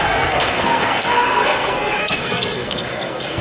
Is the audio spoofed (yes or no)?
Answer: yes